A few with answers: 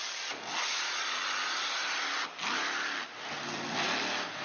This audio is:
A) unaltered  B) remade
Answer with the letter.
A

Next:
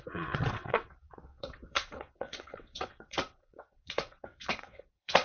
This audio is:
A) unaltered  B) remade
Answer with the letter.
B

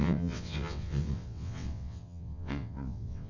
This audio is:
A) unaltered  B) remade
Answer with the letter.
B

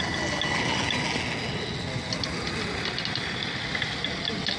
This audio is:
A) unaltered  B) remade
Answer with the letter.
A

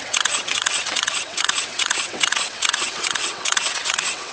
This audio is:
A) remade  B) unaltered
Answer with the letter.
A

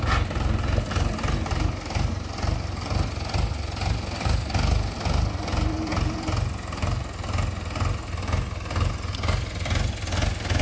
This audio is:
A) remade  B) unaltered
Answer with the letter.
B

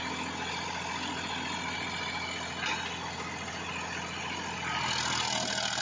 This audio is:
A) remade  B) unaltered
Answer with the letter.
B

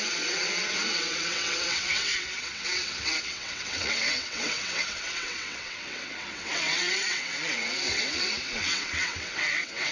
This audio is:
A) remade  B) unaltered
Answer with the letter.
A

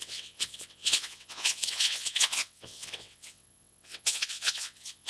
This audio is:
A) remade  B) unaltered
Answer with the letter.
A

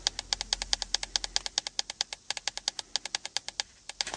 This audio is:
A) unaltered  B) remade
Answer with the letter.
A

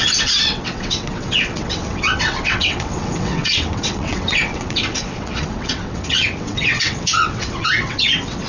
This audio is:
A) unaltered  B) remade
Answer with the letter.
B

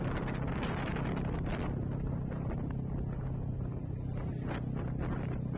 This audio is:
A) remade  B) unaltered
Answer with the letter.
B